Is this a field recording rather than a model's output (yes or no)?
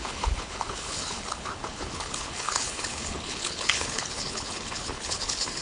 no